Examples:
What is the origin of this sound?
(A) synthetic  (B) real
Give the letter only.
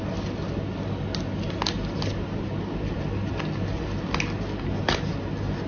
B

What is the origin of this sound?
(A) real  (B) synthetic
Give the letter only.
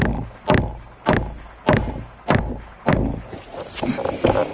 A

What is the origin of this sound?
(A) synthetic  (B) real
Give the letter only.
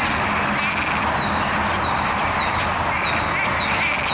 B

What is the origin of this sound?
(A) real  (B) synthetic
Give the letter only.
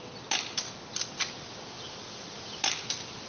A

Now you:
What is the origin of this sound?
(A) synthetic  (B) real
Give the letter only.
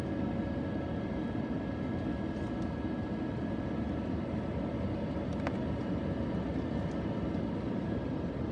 B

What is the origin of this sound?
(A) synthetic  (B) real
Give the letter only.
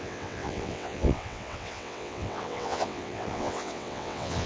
A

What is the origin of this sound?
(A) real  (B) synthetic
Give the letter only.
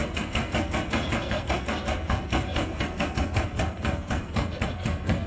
B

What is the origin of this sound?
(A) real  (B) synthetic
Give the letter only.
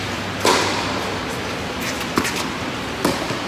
A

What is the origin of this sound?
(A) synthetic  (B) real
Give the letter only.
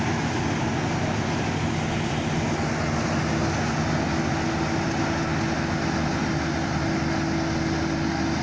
B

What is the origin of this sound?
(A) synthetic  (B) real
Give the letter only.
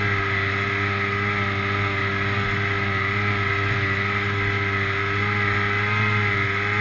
B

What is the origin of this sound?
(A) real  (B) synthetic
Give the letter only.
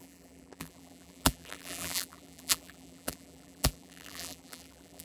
B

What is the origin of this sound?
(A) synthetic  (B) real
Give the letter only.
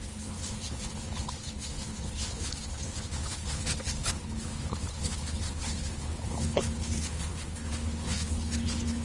A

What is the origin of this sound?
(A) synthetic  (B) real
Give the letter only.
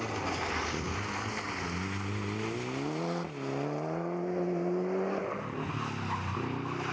B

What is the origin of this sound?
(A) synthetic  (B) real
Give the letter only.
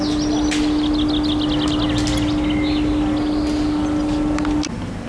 B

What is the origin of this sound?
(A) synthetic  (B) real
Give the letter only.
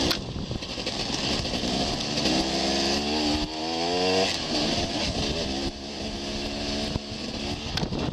B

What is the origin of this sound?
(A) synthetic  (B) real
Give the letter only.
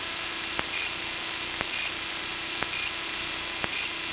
B